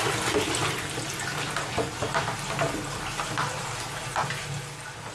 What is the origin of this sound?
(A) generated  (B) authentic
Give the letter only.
B